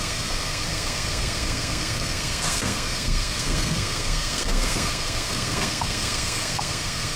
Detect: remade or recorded remade